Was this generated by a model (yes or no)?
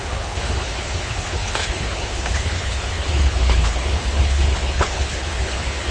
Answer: yes